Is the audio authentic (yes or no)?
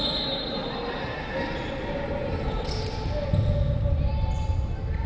yes